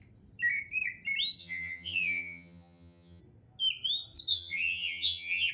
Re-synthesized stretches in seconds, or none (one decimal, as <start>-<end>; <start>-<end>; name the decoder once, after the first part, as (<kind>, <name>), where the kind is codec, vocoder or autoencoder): 1.4-3.2 (vocoder, HiFi-GAN); 4.3-5.5